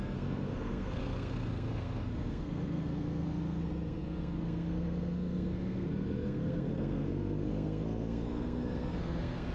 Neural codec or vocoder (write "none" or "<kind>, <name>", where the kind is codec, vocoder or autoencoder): codec, SNAC